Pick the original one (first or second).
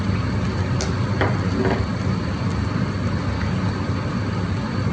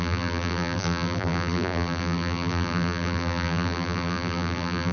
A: first